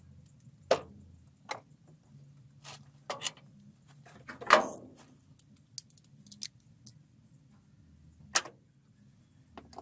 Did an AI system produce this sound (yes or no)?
no